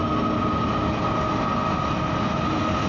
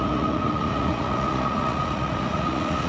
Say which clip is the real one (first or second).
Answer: first